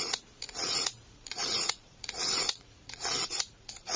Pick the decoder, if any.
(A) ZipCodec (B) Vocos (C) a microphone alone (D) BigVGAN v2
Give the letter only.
B